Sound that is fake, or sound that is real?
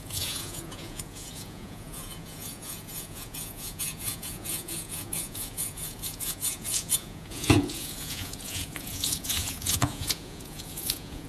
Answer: fake